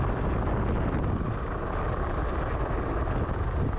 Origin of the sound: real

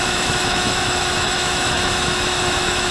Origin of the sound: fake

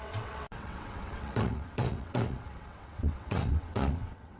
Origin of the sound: fake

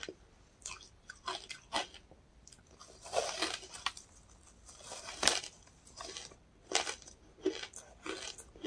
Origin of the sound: real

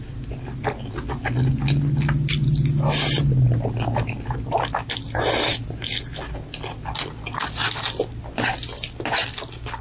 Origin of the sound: real